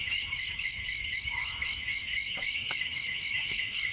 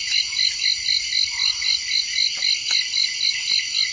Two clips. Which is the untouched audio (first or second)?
second